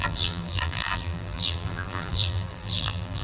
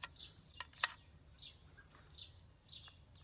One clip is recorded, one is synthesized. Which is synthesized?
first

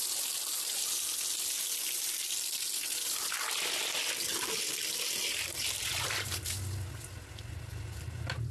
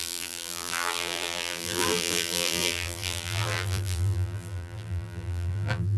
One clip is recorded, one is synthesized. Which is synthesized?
second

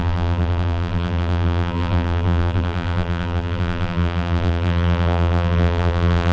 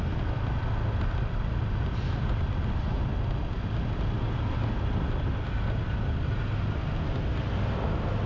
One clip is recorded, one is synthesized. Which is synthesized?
first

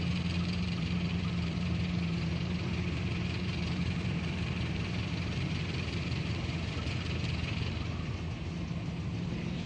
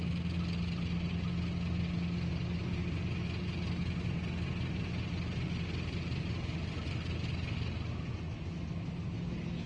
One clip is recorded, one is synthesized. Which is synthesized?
first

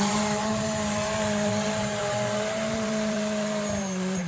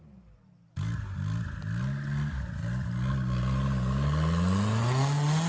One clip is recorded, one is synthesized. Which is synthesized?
first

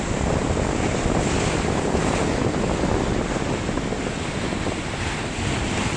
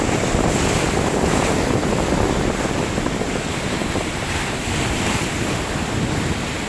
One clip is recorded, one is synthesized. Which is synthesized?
second